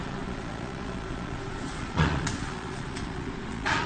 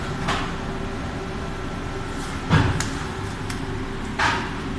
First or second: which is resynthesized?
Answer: first